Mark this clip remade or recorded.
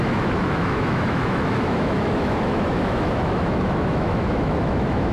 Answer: remade